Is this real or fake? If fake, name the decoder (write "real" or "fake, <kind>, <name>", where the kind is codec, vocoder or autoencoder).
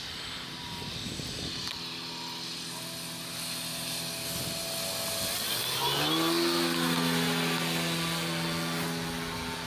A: real